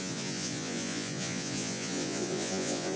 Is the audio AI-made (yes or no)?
yes